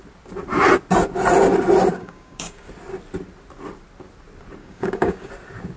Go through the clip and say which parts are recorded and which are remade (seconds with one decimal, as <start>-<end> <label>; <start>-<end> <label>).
0.0-1.9 recorded; 1.9-2.7 remade; 2.7-4.6 recorded; 4.6-5.3 remade; 5.3-5.8 recorded